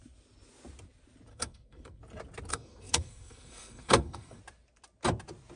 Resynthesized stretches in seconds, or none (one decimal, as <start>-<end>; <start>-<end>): 1.3-2.0; 2.5-4.4